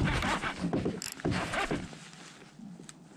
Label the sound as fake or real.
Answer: real